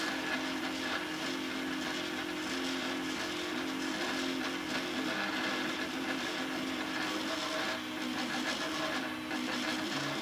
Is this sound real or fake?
real